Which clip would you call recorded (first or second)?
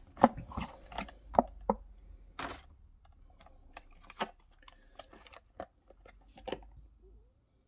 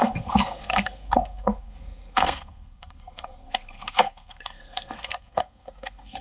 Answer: first